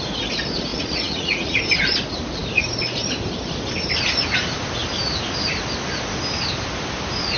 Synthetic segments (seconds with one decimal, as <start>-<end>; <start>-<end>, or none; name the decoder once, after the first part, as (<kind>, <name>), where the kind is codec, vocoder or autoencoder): 0.7-1.6 (vocoder, Vocos)